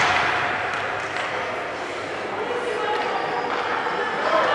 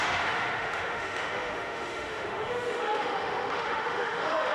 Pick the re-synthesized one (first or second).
second